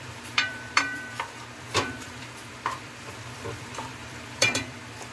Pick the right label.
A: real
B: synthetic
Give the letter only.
B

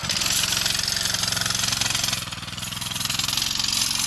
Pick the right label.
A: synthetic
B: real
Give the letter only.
B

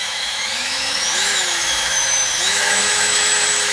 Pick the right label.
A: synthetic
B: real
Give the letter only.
A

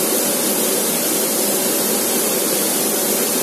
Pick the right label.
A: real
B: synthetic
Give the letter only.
A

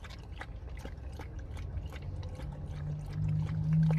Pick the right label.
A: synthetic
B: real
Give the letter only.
B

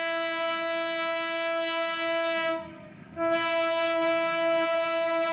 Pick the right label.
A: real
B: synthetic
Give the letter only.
B